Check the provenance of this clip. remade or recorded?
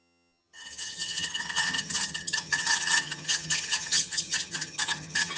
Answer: remade